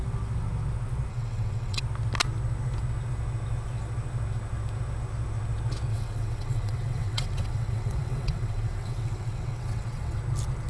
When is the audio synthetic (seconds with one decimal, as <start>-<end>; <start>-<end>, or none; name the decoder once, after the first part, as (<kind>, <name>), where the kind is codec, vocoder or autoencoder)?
1.1-1.8 (vocoder, WaveNeXt); 5.9-10.2

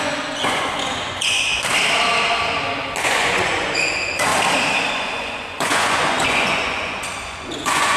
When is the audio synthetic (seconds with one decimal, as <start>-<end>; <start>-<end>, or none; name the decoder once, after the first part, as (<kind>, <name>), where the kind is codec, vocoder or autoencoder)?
0.0-1.5 (vocoder, Vocos); 3.0-4.3; 4.9-8.0

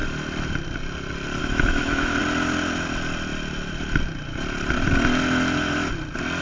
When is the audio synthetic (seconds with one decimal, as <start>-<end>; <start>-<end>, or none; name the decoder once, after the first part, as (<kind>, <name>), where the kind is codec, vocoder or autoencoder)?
1.4-2.2 (autoencoder, DAC-VAE)

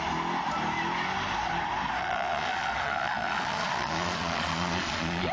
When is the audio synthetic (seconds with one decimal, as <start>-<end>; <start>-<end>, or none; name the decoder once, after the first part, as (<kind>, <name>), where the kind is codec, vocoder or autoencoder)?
2.0-5.3 (vocoder, Vocos)

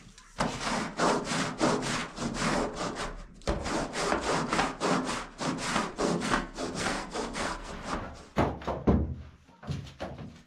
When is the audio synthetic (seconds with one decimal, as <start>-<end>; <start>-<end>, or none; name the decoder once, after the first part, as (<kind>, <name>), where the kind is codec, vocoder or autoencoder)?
5.9-7.7 (codec, SNAC)